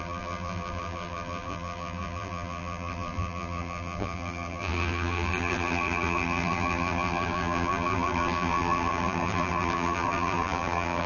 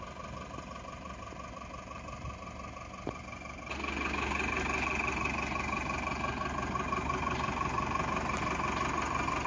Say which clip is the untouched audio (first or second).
second